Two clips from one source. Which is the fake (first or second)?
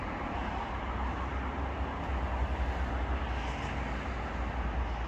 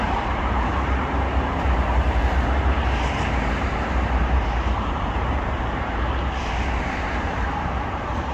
second